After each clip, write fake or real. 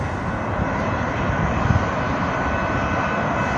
real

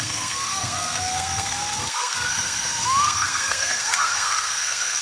fake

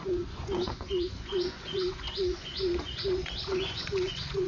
fake